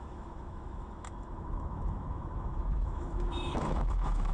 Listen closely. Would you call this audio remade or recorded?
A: remade